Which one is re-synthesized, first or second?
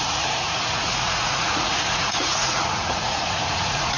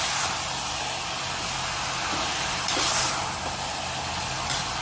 first